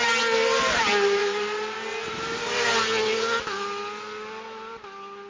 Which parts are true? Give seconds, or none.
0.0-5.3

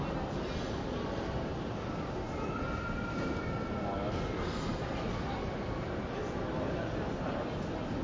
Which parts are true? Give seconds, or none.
0.0-8.0

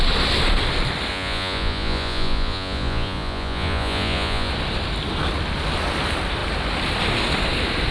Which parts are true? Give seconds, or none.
0.0-1.1; 4.5-7.9

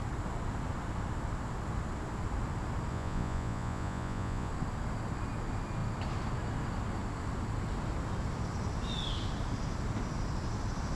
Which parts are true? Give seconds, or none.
0.0-2.9; 4.5-10.9

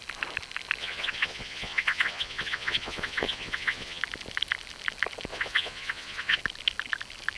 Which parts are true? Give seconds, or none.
0.0-0.8; 4.0-5.3; 6.4-7.4

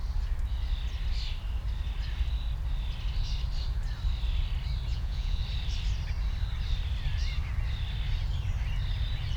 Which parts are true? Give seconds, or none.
0.0-4.9; 5.4-9.4

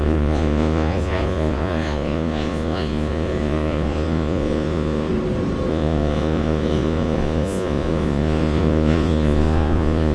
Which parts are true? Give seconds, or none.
5.1-5.7

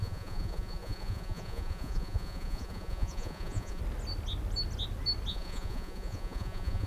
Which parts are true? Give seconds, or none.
3.8-5.3